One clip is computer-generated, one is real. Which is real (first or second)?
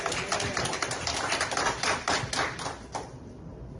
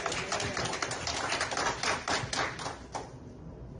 second